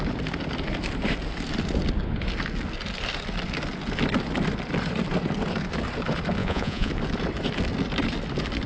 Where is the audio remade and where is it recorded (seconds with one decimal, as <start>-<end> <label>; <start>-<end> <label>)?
0.0-6.4 recorded; 6.4-6.9 remade; 6.9-8.7 recorded